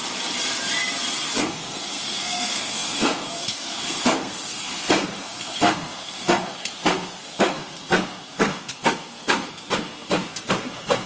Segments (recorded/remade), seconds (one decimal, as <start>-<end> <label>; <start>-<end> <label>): 0.0-1.4 recorded; 1.4-11.1 remade